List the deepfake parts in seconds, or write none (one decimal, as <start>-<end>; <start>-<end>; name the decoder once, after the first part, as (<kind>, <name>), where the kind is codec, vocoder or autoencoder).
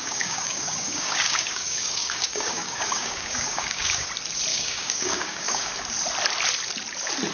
0.0-4.1 (codec, DAC); 4.5-5.7